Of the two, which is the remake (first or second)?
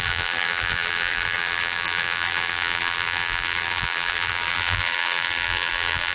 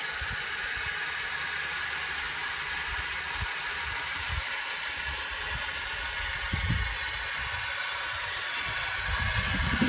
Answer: first